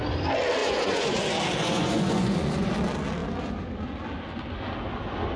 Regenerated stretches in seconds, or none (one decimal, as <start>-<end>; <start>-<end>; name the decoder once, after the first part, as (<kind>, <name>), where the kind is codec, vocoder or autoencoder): 0.6-1.2 (vocoder, Vocos); 1.6-2.7

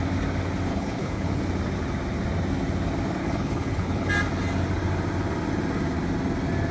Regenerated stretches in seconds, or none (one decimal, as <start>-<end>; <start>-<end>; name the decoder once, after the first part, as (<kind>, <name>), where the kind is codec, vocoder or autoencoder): 0.7-1.4 (codec, HILCodec); 3.2-4.1

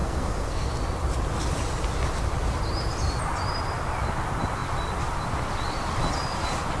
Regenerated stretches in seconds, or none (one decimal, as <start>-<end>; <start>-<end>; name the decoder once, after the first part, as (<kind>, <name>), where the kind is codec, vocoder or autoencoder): 0.0-0.7 (codec, SNAC)

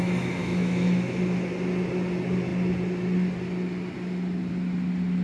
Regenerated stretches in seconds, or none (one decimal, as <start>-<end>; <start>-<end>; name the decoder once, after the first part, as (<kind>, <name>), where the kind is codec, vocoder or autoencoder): 0.4-1.2 (autoencoder, DAC-VAE)

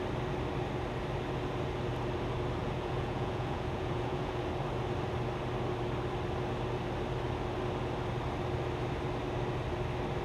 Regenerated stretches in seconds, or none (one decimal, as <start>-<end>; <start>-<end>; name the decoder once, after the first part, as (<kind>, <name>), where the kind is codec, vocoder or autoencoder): 2.6-4.4 (vocoder, Vocos)